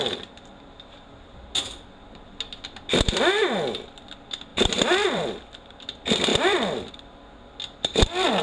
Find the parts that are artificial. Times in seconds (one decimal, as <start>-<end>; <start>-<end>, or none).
4.5-5.7